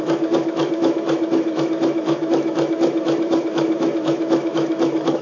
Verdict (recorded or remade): remade